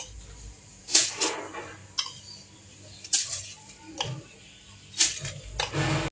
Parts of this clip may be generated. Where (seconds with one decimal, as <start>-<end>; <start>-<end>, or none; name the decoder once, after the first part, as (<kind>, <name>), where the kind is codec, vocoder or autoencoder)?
0.7-1.2 (vocoder, Vocos)